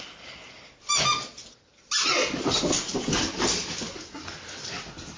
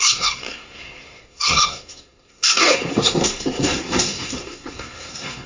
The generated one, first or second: second